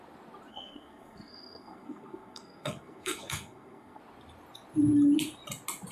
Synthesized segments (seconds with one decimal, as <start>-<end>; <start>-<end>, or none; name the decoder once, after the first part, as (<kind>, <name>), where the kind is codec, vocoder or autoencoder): 0.5-4.0 (codec, SNAC)